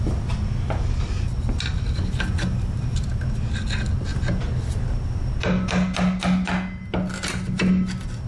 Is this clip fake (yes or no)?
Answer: no